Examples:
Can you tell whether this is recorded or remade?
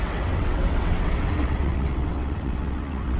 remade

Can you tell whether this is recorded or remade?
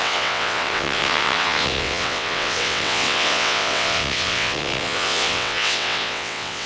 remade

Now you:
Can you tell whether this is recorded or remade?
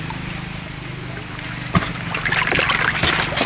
recorded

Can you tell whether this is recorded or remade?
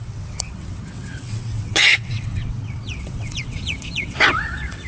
remade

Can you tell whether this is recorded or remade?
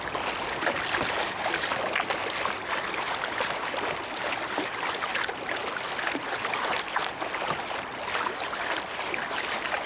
recorded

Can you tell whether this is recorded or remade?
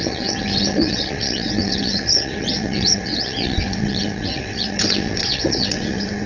remade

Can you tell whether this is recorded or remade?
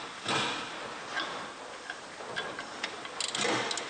recorded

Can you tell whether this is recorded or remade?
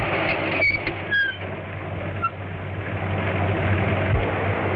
recorded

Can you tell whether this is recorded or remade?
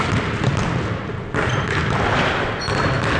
recorded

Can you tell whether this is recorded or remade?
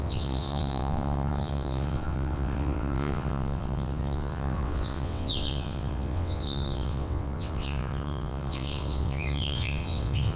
remade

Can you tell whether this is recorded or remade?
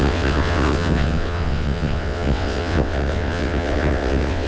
remade